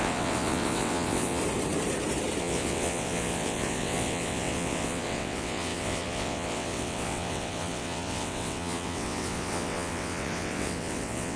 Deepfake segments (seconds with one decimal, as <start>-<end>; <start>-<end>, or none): 0.0-1.4; 2.4-11.4